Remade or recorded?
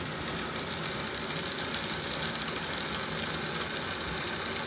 recorded